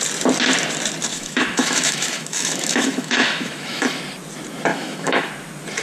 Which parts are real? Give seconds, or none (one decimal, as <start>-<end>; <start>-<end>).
0.0-1.1; 4.0-4.7; 5.3-5.8